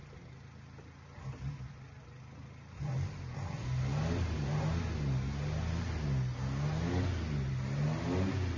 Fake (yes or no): no